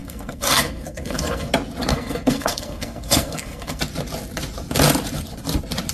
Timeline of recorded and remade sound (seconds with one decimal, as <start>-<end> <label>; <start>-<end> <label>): 0.0-1.5 remade; 1.5-1.9 recorded; 1.9-3.8 remade; 3.8-5.9 recorded